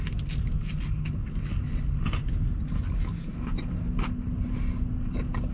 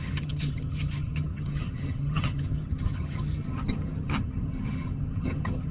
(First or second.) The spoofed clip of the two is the second